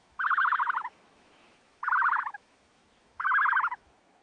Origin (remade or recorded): remade